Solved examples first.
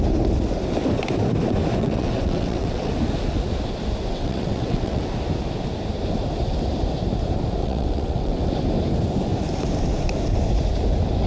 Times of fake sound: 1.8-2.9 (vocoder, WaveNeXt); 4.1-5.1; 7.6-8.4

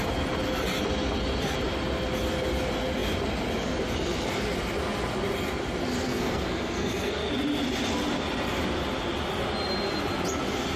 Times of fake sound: 6.0-7.3 (codec, SNAC)

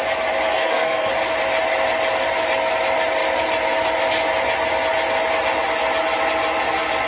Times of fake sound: 0.5-1.1 (codec, SNAC)